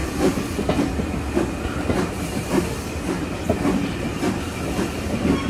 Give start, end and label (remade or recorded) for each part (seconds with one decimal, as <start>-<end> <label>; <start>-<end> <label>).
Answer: 0.0-5.5 recorded